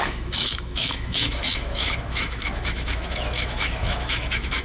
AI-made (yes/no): yes